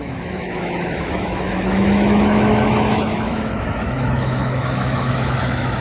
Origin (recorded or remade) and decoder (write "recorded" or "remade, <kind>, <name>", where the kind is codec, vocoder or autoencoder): remade, autoencoder, DAC-VAE